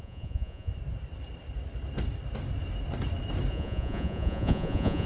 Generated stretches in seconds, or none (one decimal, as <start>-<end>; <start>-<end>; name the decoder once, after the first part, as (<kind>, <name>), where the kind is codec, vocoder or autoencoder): 0.0-0.7 (vocoder, Vocos); 3.5-5.1